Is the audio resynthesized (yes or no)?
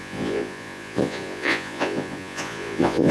yes